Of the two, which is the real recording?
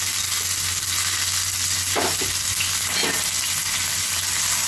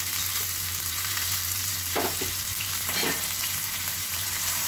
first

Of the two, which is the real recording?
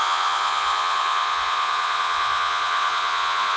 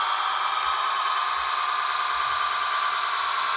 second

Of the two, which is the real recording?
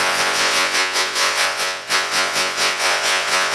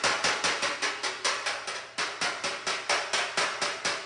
second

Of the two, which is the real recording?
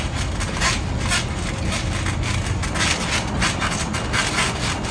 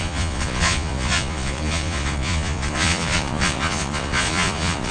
first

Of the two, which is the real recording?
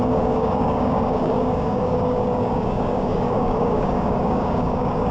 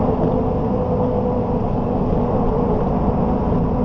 second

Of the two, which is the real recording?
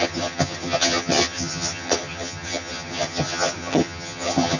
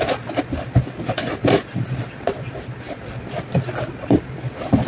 second